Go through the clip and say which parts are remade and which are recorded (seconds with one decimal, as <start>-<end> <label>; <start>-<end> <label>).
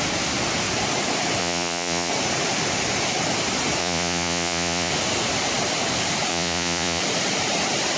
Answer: 0.0-1.4 recorded; 1.4-2.1 remade; 2.1-3.8 recorded; 3.8-4.9 remade; 4.9-6.3 recorded; 6.3-7.0 remade; 7.0-8.0 recorded